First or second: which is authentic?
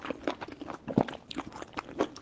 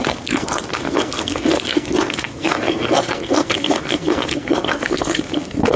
first